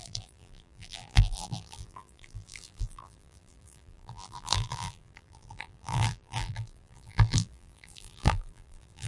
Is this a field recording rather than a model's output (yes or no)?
no